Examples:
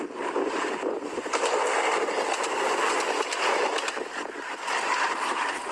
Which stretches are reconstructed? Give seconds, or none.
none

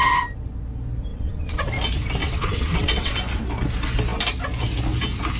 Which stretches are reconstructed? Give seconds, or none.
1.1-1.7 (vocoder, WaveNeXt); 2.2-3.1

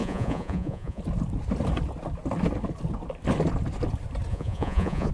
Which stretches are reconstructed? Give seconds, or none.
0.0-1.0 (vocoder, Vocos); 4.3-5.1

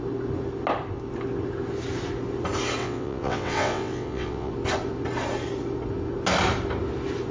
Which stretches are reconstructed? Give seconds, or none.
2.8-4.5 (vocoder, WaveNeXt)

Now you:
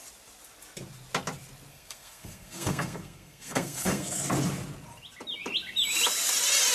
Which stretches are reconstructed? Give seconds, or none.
1.7-4.2 (codec, SNAC)

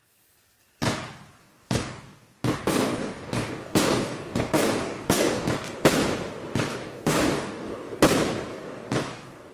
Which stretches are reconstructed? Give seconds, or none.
1.4-5.5 (codec, DAC); 6.7-8.0; 8.5-9.5